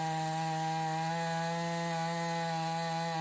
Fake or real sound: real